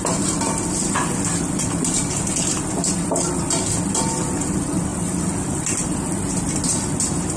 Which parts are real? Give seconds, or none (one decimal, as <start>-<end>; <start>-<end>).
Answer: 0.0-7.4